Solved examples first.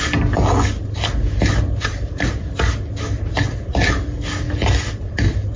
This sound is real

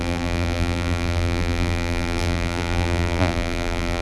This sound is fake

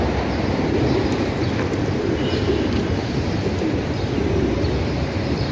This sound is fake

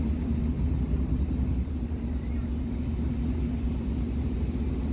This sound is real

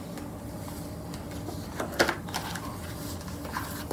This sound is real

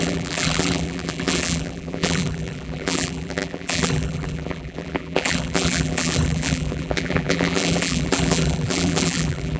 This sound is fake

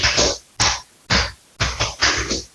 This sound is real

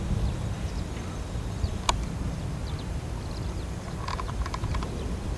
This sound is fake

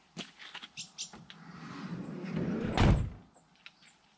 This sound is real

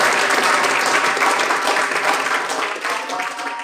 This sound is fake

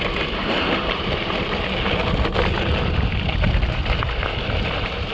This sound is real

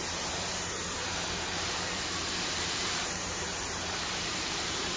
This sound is fake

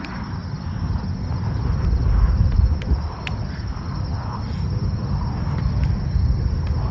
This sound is real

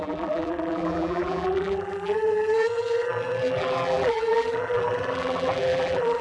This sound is fake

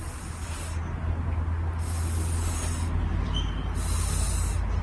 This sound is real